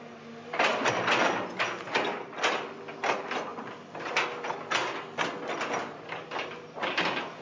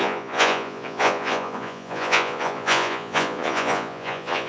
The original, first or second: first